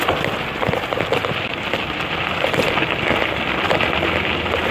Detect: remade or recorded recorded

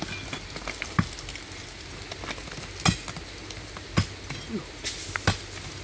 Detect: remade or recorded recorded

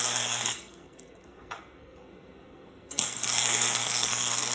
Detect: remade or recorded remade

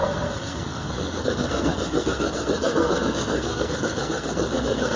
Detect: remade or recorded remade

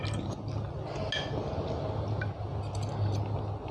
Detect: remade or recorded recorded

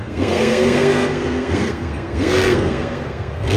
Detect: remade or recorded remade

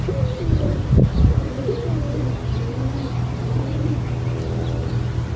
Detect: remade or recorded recorded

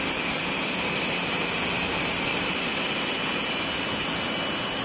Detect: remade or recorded recorded